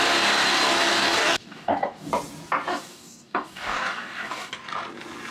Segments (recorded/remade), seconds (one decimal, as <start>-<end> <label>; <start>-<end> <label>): 0.0-0.9 recorded; 0.9-2.1 remade; 2.1-2.7 recorded; 2.7-4.5 remade; 4.5-5.3 recorded